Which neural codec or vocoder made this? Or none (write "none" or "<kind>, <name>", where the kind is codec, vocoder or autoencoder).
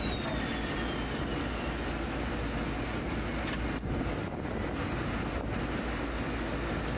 none